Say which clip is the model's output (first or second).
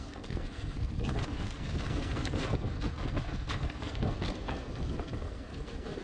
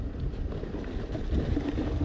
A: first